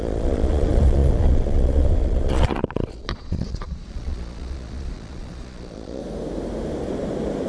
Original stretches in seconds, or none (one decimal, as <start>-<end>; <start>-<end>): 6.0-7.5